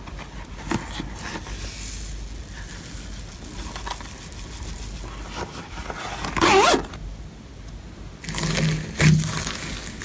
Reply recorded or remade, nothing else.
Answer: recorded